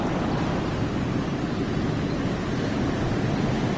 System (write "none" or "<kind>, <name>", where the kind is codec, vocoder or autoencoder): none